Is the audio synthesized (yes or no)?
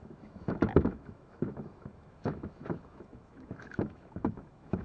yes